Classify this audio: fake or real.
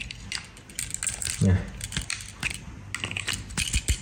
real